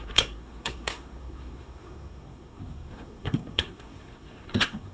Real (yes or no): no